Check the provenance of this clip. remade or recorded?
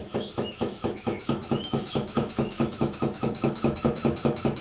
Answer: remade